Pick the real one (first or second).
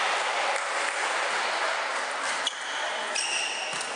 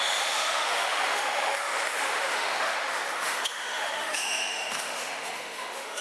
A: first